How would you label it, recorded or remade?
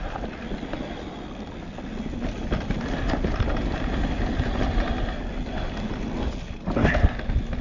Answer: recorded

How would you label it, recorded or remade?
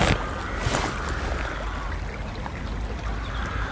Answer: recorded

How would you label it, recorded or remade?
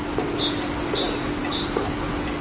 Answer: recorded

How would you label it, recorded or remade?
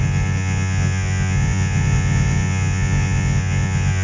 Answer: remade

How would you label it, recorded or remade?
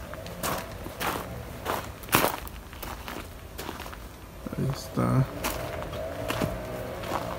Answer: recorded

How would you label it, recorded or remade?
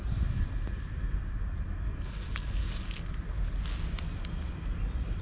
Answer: recorded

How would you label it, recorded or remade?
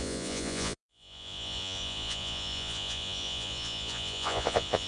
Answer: remade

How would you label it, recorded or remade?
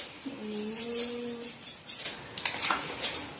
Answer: recorded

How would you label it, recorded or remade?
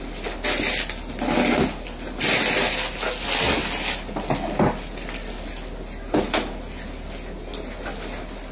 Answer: recorded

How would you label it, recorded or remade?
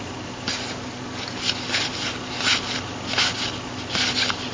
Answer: recorded